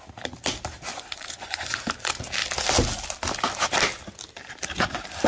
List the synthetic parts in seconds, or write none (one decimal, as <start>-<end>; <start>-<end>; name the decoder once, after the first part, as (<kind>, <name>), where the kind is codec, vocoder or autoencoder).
0.9-1.8 (vocoder, Vocos)